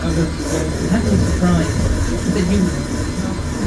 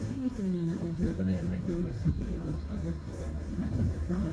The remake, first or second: second